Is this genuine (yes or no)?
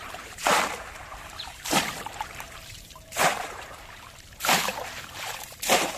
no